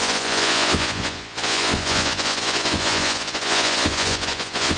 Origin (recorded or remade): remade